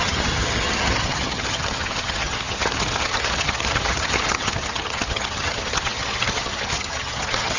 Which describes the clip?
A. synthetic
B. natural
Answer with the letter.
A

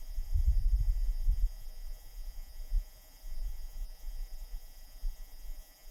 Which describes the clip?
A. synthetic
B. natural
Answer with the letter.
A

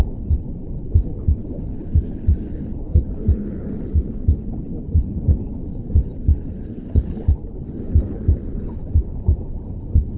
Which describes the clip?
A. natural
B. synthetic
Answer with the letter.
B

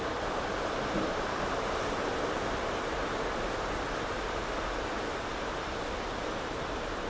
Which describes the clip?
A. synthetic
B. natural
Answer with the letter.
B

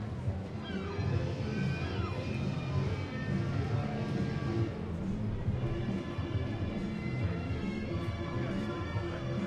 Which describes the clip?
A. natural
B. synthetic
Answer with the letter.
A